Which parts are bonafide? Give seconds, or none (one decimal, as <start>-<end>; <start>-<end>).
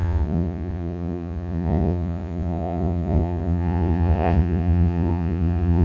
none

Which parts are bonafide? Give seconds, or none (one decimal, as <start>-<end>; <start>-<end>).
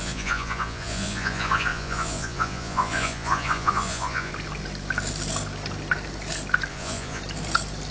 4.3-6.7; 7.2-7.9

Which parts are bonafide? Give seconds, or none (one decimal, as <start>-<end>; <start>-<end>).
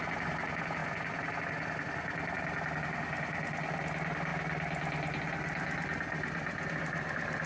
0.0-7.5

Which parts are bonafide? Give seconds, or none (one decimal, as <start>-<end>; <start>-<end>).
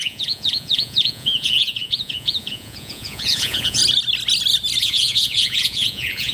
3.8-4.8